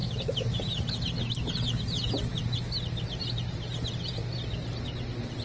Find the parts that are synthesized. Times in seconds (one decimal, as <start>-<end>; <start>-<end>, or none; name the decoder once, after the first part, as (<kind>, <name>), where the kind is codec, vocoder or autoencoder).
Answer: 3.2-5.4 (vocoder, BigVGAN v2)